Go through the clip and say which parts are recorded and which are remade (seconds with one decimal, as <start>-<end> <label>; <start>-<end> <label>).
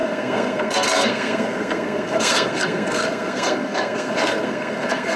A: 0.0-5.2 remade